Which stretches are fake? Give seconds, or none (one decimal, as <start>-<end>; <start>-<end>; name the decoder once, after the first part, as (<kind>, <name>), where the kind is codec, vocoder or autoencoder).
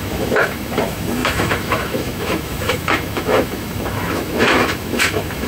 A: 0.0-5.5 (autoencoder, DAC-VAE)